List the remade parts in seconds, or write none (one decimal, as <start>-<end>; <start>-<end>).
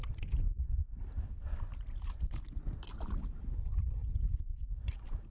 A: 0.8-1.7; 4.0-5.3